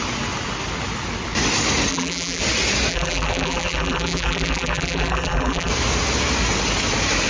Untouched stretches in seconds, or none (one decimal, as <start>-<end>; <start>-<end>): 0.0-1.9; 2.4-2.9; 5.7-7.3